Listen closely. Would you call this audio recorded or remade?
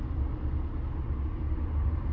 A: recorded